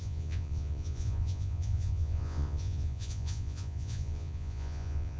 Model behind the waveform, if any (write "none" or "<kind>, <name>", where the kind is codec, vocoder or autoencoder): vocoder, Vocos